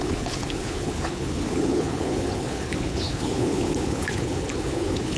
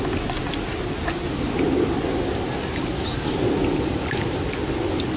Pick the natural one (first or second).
second